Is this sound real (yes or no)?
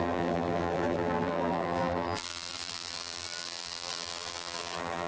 no